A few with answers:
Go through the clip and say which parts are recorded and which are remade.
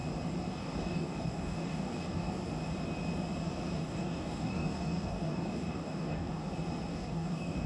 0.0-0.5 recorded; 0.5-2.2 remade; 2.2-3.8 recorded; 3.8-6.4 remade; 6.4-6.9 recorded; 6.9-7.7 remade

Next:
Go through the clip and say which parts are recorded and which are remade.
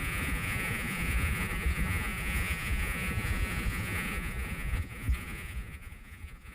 0.0-6.5 remade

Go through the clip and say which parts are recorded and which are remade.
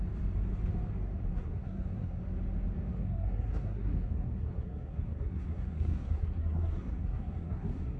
0.0-1.3 recorded; 1.3-2.2 remade; 2.2-2.9 recorded; 2.9-8.0 remade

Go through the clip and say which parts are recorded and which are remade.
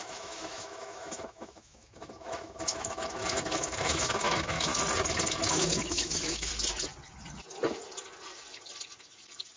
0.0-4.7 remade; 4.7-5.5 recorded; 5.5-6.5 remade; 6.5-9.6 recorded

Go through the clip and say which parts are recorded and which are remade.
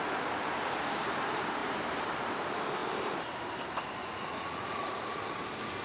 0.0-4.0 recorded; 4.0-5.3 remade; 5.3-5.8 recorded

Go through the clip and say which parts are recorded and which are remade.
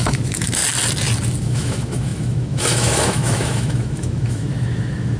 0.0-0.6 remade; 0.6-1.4 recorded; 1.4-5.2 remade